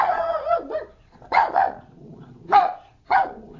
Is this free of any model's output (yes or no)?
no